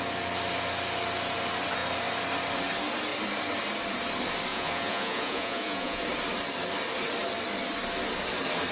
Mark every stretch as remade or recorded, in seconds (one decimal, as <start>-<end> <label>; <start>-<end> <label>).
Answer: 0.0-4.5 recorded; 4.5-6.0 remade; 6.0-8.7 recorded